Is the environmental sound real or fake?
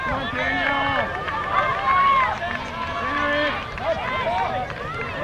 real